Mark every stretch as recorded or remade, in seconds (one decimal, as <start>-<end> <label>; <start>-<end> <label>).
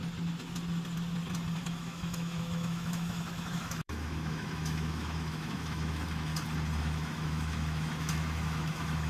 0.0-1.6 recorded; 1.6-6.3 remade; 6.3-6.8 recorded; 6.8-9.1 remade